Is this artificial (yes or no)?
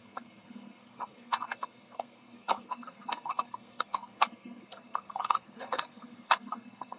yes